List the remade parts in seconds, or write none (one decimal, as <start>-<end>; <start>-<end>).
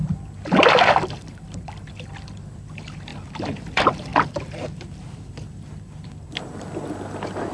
0.9-3.1; 3.6-4.1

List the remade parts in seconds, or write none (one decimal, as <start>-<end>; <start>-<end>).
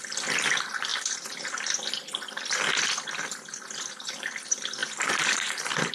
none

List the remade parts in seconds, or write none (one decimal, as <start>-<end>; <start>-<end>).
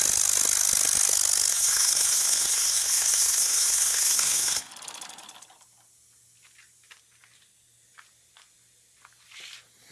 1.5-4.7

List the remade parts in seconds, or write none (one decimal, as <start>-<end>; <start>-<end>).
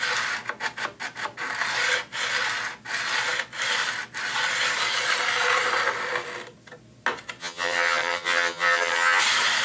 7.4-9.2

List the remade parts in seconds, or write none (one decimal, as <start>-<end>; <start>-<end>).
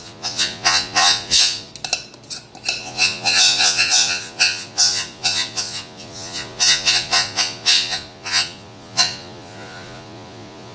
0.0-1.7; 2.8-10.7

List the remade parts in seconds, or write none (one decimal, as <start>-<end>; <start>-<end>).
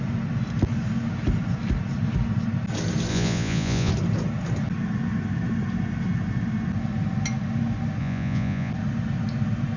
3.1-3.9; 8.0-8.7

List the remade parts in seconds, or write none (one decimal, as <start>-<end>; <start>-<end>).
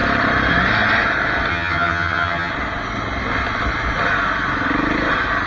1.5-2.5